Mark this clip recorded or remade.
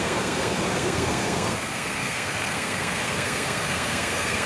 remade